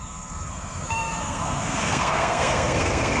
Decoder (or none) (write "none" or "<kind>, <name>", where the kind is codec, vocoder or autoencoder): codec, SNAC